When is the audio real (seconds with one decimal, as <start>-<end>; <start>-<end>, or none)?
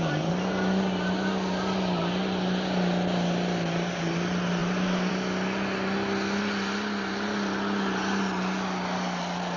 0.0-4.6; 5.1-9.6